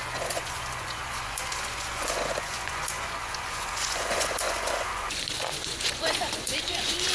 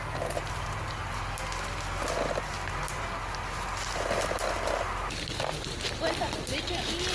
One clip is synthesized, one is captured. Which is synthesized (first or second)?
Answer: first